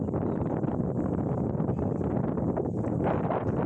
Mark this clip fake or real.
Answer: real